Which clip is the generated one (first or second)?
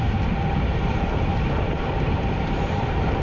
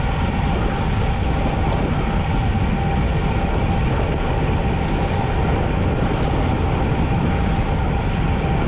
first